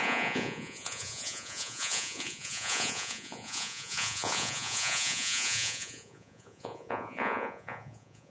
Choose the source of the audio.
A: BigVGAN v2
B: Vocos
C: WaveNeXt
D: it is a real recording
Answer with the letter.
B